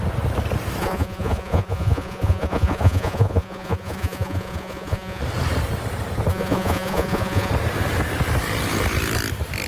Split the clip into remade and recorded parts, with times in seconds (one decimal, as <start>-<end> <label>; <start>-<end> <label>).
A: 0.0-0.8 recorded; 0.8-5.2 remade; 5.2-6.3 recorded; 6.3-7.5 remade; 7.5-9.7 recorded